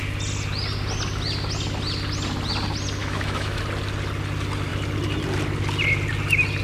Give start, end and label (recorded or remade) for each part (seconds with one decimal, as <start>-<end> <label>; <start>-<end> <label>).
0.0-3.0 recorded; 3.0-3.6 remade; 3.6-6.6 recorded